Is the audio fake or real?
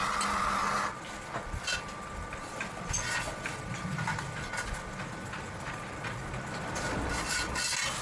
real